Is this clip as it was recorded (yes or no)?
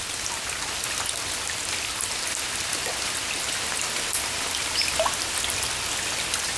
yes